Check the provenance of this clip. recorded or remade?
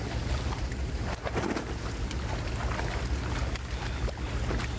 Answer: recorded